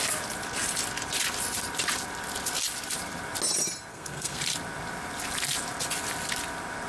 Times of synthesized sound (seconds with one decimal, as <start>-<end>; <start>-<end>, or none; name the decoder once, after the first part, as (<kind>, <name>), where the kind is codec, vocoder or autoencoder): 3.9-4.4 (codec, SNAC)